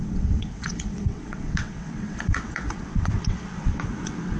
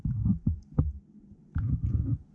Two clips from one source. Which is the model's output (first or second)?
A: first